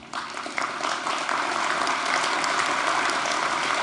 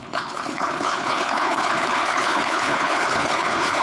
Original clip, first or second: first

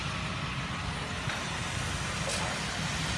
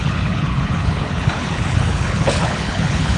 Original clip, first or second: first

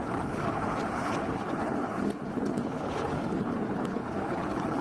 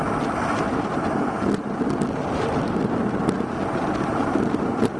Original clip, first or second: second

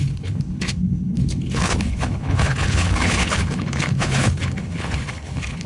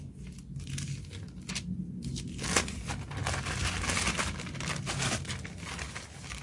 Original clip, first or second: second